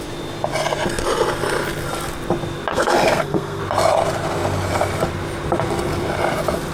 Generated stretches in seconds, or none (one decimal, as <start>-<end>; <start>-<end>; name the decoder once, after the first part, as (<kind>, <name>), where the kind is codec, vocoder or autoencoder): 2.7-3.6 (codec, SNAC)